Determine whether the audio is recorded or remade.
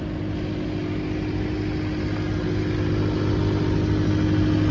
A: recorded